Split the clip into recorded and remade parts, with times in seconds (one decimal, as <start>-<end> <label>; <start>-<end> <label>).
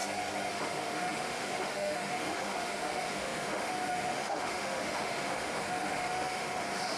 0.0-0.5 recorded; 0.5-7.0 remade